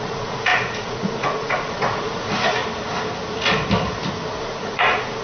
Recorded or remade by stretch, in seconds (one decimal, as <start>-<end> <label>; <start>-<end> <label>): 0.0-2.6 remade; 2.6-4.4 recorded; 4.4-5.2 remade